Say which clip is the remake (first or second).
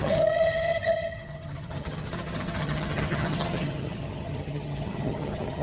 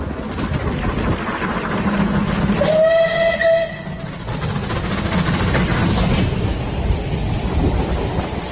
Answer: first